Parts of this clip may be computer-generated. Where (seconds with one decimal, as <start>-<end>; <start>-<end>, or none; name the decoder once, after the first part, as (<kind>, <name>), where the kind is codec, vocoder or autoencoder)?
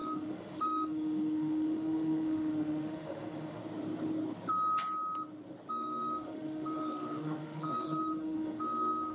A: 0.0-3.6 (autoencoder, DAC-VAE); 5.7-9.1